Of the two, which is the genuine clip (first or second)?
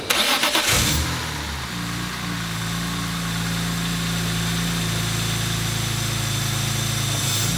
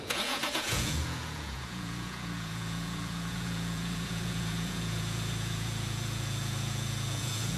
first